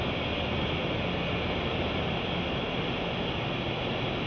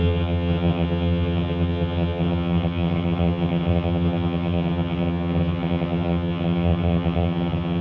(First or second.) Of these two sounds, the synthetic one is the second